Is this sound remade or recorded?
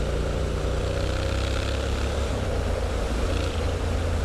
recorded